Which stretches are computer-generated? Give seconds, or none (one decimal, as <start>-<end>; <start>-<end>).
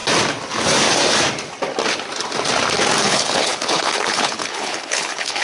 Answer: 3.0-5.4